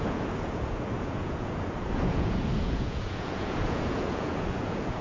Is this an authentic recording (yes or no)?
no